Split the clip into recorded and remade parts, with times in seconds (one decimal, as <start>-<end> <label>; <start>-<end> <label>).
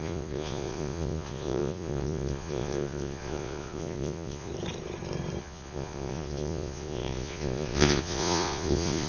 0.0-4.5 remade; 4.5-5.4 recorded; 5.4-9.1 remade